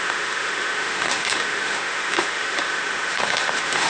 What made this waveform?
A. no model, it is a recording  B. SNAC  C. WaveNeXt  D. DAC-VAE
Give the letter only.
D